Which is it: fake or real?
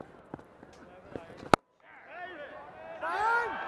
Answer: real